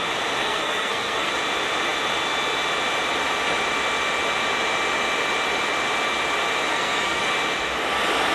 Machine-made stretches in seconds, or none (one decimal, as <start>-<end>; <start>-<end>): 0.4-1.3; 6.7-7.2